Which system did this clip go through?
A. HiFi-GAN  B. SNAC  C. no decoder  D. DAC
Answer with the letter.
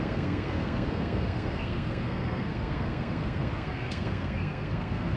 B